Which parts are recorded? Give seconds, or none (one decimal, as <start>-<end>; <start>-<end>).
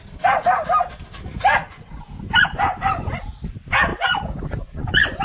0.0-1.6; 3.1-3.9